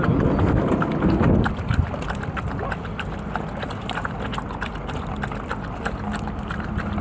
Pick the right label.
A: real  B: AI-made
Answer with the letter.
A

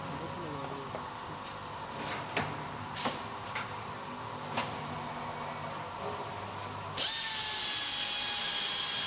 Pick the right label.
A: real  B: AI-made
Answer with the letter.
A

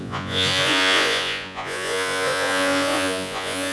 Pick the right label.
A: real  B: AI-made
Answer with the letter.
B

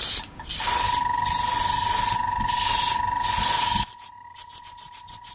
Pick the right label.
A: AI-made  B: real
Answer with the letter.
B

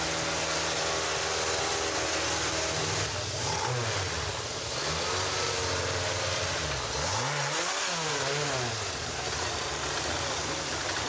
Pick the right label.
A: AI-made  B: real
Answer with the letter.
B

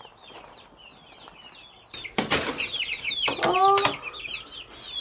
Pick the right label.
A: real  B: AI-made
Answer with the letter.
A